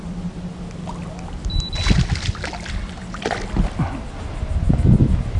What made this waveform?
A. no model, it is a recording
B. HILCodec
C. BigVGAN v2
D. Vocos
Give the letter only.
A